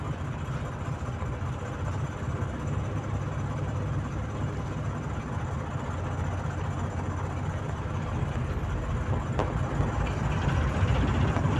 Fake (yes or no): no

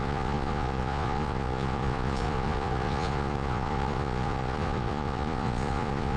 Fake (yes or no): yes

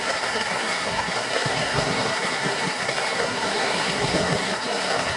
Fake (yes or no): yes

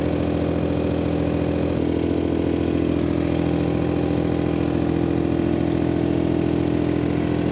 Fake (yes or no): no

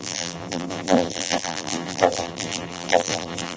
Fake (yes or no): yes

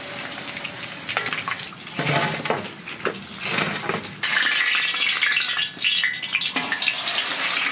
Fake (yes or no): no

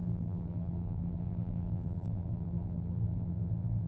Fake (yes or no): yes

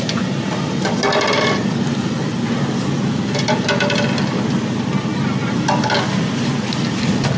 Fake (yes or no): no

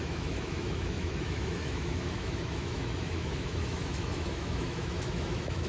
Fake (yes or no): yes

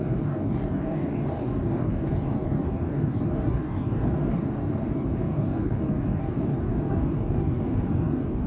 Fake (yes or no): yes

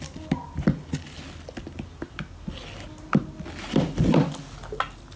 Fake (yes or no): no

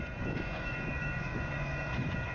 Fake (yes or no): yes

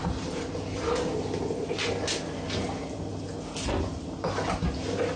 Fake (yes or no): no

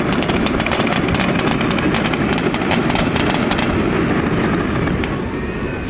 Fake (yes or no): no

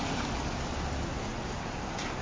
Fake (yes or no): no